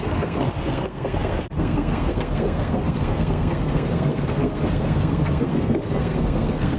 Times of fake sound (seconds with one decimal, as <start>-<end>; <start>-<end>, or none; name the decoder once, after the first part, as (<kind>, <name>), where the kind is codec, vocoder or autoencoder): 0.0-6.8 (codec, SNAC)